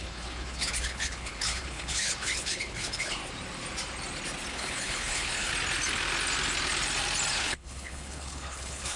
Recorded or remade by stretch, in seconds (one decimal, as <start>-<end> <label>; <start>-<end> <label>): 0.0-3.2 remade; 3.2-4.5 recorded; 4.5-5.5 remade; 5.5-7.3 recorded; 7.3-9.0 remade